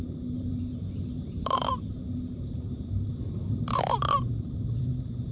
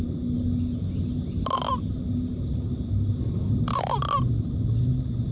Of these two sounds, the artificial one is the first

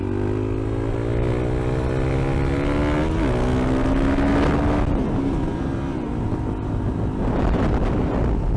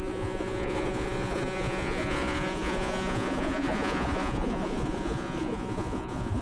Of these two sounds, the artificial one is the second